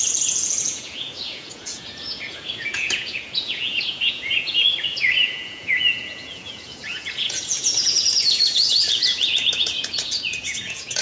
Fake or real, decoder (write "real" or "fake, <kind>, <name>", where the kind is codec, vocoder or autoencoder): fake, vocoder, Vocos